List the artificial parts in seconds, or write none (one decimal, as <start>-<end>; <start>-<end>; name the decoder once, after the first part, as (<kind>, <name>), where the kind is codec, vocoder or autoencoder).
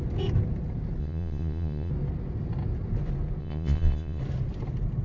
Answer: 1.0-1.9 (vocoder, Vocos); 3.4-4.2